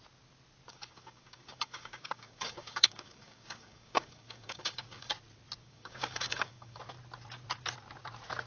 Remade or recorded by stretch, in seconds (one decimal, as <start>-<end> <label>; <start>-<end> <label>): 0.0-0.7 recorded; 0.7-5.1 remade; 5.1-5.6 recorded; 5.6-6.8 remade; 6.8-8.5 recorded